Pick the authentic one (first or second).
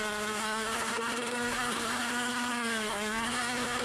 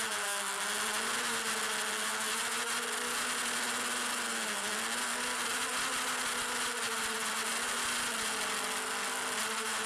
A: second